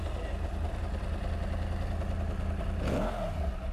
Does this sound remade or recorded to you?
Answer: recorded